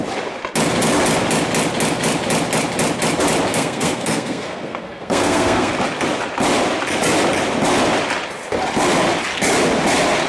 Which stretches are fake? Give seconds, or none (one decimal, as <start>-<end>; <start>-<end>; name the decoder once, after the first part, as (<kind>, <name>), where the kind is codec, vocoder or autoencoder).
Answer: 3.5-5.7 (codec, SNAC)

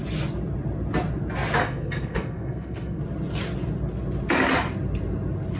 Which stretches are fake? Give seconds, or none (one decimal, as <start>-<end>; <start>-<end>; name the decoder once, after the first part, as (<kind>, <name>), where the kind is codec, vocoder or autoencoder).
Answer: 1.6-3.0 (codec, SNAC)

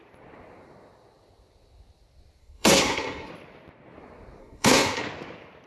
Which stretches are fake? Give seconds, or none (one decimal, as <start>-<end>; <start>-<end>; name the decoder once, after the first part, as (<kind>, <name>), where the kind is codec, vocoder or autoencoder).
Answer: 2.4-3.3 (codec, SNAC); 4.4-5.0

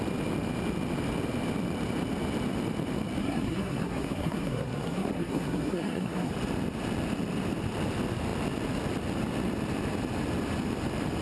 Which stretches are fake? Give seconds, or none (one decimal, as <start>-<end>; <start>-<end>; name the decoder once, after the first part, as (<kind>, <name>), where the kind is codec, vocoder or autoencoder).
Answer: 3.2-6.3 (codec, SNAC)

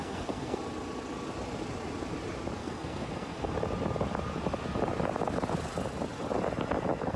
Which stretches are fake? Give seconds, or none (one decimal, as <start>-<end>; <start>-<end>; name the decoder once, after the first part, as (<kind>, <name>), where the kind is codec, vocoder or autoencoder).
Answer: 0.0-0.6 (codec, SNAC); 2.6-3.5

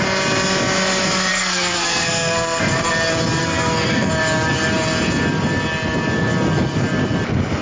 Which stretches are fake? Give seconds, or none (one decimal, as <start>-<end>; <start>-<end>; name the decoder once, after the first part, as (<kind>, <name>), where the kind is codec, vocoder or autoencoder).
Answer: 1.3-2.6 (codec, SNAC); 3.4-4.1